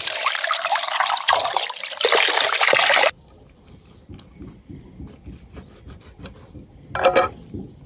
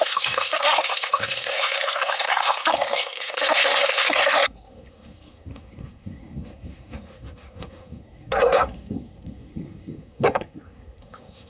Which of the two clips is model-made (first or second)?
second